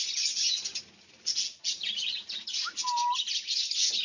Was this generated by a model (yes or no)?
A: no